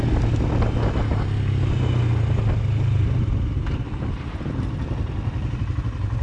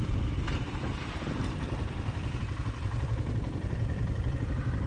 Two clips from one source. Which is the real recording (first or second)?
first